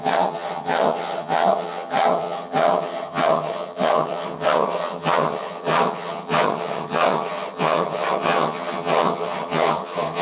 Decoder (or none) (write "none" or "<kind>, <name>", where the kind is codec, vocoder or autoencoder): vocoder, HiFi-GAN